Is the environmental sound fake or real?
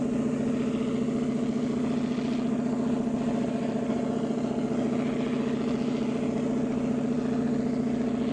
real